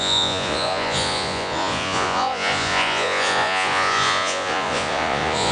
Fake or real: fake